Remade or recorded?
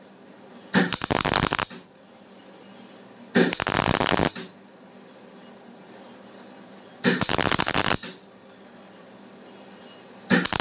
recorded